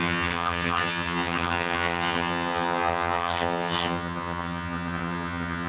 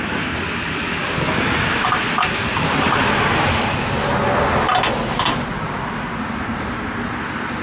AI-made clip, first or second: first